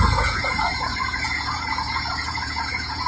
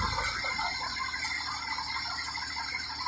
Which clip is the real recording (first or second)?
second